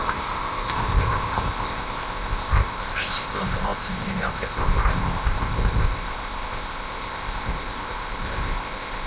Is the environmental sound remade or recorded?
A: remade